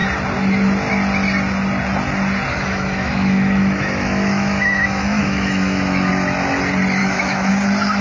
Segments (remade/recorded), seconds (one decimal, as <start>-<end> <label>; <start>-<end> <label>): 0.0-2.5 recorded; 2.5-6.1 remade; 6.1-7.0 recorded; 7.0-7.5 remade; 7.5-8.0 recorded